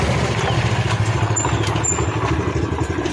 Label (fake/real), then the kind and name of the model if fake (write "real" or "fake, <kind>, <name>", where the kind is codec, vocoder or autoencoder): real